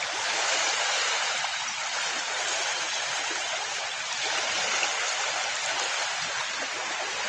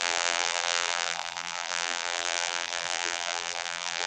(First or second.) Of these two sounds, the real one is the first